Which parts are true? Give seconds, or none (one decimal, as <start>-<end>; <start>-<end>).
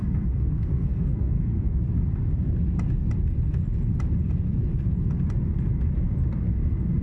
1.8-7.0